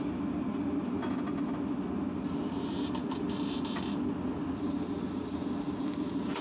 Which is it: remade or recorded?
recorded